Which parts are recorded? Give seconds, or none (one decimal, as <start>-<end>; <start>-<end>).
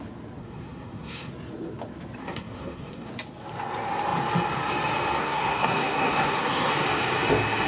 0.0-0.4; 1.3-2.2; 3.1-5.2; 6.7-7.7